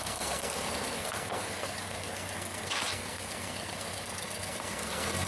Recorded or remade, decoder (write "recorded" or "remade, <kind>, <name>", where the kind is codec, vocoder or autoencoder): remade, codec, SNAC